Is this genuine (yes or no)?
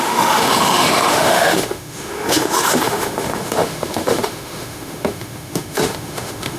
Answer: no